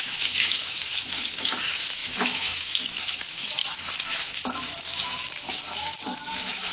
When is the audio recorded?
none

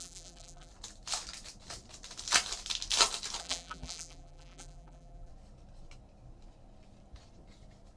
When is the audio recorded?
0.7-3.4; 5.3-8.0

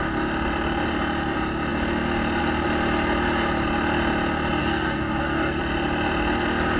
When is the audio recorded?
0.0-4.6; 5.6-6.8

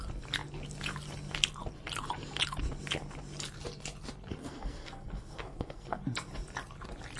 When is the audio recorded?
0.0-4.4; 6.0-7.2

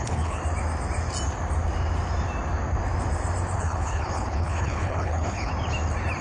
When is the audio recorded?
0.4-3.6; 5.5-6.2